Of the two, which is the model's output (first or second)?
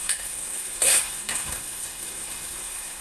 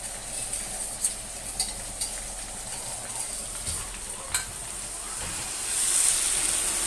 first